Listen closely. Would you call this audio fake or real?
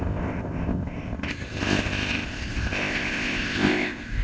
fake